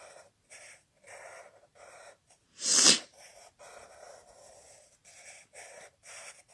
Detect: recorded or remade remade